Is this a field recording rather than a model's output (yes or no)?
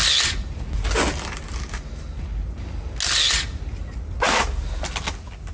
yes